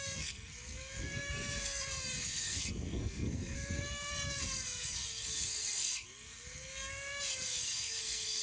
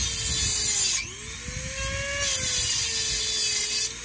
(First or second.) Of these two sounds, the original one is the second